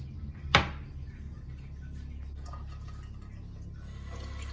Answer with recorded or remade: recorded